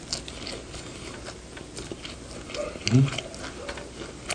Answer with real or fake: real